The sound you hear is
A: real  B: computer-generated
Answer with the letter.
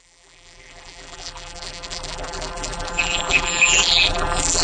B